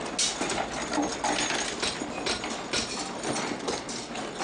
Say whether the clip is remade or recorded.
recorded